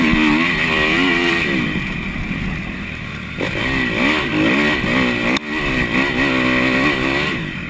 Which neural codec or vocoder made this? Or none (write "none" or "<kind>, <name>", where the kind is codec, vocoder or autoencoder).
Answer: none